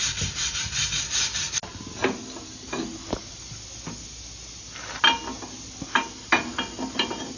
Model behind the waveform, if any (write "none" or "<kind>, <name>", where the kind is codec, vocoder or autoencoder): none